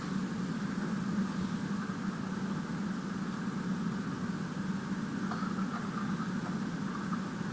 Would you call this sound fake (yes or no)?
no